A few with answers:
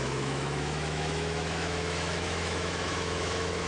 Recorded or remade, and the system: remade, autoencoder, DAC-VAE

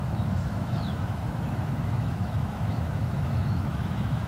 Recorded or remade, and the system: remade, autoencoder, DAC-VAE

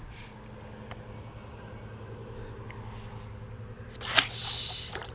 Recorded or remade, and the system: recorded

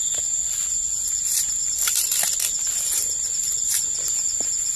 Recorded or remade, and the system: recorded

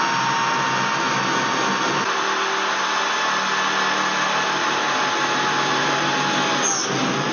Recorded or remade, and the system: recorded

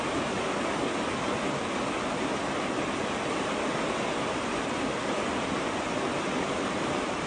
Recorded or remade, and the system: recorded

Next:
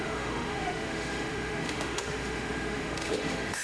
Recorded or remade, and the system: remade, autoencoder, DAC-VAE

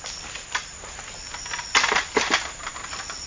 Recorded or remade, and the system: recorded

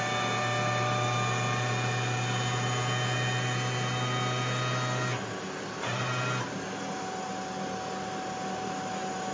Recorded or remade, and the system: recorded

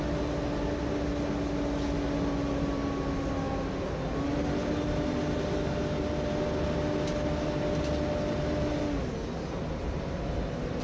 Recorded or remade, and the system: recorded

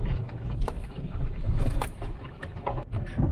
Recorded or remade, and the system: remade, autoencoder, DAC-VAE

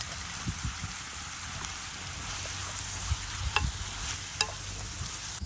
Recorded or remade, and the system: recorded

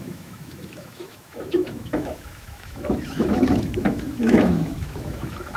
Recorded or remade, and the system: remade, autoencoder, DAC-VAE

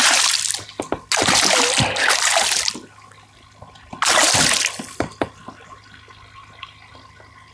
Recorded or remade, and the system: recorded